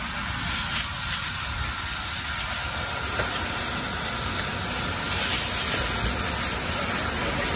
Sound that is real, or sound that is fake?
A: real